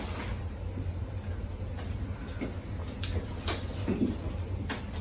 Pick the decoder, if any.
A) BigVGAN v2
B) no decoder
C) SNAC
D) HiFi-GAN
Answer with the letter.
B